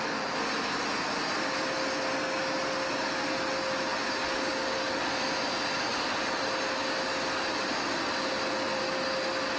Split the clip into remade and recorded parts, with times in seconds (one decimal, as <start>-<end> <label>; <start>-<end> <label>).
0.0-9.6 recorded